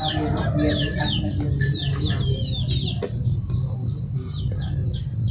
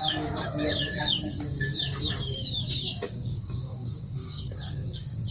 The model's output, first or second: second